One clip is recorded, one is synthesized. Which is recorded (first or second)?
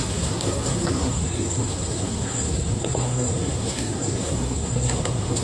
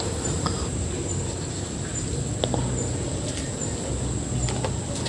second